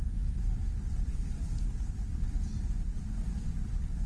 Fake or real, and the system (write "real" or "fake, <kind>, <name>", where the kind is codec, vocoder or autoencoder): real